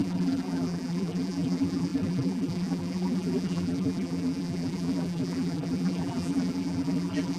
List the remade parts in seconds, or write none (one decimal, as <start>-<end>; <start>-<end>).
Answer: 0.0-7.4